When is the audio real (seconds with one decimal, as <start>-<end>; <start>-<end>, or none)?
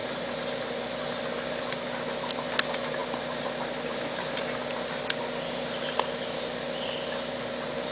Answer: 0.0-7.9